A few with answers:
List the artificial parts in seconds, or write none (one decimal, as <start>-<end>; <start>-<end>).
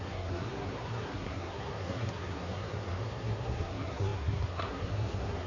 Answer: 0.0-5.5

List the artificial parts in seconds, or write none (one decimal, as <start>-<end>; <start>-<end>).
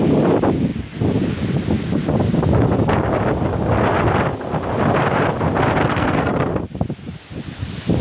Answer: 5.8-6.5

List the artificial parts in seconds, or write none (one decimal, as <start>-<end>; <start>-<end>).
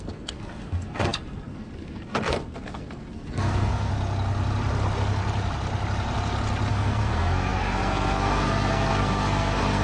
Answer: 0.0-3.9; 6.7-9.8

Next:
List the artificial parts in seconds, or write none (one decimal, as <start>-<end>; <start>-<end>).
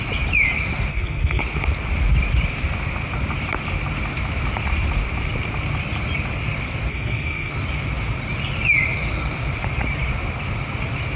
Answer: 0.9-1.4; 6.9-7.5